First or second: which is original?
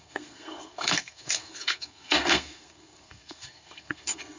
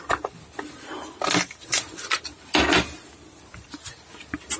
second